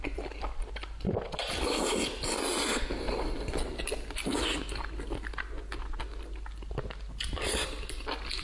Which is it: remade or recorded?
recorded